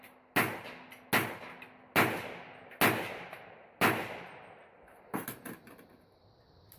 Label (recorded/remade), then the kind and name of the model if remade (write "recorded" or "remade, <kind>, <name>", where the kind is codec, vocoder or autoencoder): recorded